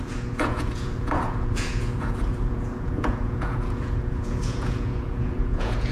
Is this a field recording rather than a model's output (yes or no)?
no